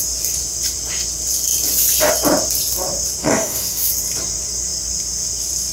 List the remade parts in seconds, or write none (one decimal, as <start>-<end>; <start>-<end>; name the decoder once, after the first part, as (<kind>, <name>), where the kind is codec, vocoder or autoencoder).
3.2-3.9 (codec, DAC)